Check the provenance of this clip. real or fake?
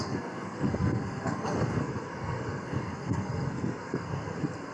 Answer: fake